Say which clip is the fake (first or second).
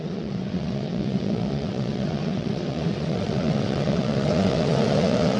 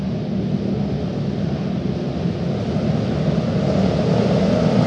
first